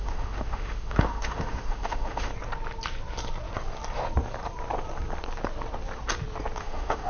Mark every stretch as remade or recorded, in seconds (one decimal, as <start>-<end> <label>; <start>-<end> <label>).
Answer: 0.0-2.3 remade; 2.3-6.6 recorded; 6.6-7.1 remade